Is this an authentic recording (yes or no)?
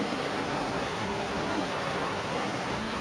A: no